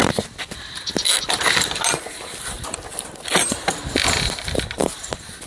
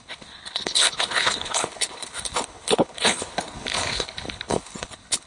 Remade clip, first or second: second